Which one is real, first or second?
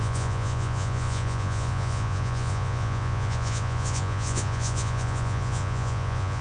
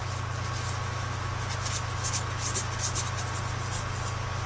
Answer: second